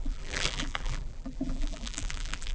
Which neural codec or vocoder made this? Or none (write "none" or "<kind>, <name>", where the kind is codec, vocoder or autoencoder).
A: vocoder, BigVGAN v2